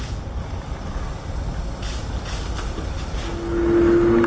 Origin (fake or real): real